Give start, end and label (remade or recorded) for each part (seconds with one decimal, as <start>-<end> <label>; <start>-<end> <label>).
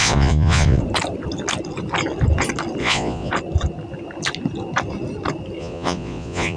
0.0-0.8 remade; 0.8-2.8 recorded; 2.8-3.3 remade; 3.3-5.6 recorded; 5.6-6.6 remade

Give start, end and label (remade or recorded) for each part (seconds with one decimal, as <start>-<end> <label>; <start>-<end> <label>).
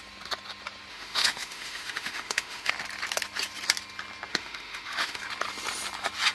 0.0-0.9 recorded; 0.9-2.7 remade; 2.7-4.3 recorded; 4.3-5.2 remade; 5.2-6.3 recorded